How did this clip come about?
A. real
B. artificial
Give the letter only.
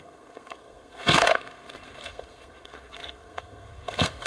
B